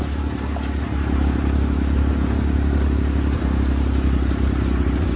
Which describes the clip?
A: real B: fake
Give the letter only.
A